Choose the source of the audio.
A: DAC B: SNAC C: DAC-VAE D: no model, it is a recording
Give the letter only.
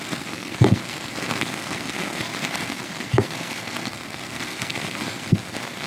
B